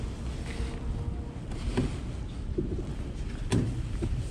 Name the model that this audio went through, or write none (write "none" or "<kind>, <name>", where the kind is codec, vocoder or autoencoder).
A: none